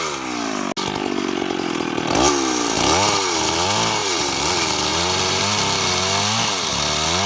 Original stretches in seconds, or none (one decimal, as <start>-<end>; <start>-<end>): 0.0-4.0; 4.5-4.9; 5.4-7.3